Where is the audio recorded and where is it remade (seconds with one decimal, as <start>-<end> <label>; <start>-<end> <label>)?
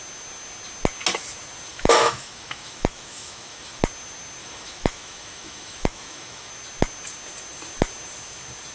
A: 0.0-1.7 recorded; 1.7-3.8 remade; 3.8-4.4 recorded; 4.4-6.5 remade; 6.5-8.7 recorded